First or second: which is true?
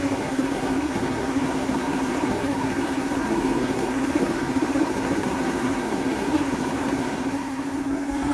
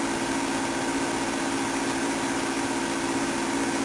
second